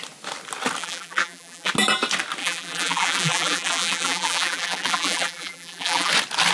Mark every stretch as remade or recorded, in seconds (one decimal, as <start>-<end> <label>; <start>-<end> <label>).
0.0-0.8 recorded; 0.8-1.7 remade; 1.7-2.4 recorded; 2.4-6.1 remade; 6.1-6.5 recorded